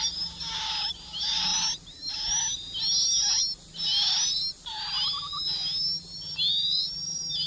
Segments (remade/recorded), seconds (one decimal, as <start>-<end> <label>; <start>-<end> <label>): 0.0-7.5 recorded